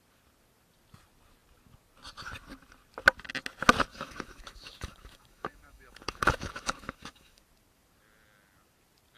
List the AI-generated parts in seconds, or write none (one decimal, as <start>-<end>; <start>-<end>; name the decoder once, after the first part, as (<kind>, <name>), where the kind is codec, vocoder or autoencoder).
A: 3.9-7.4 (autoencoder, DAC-VAE)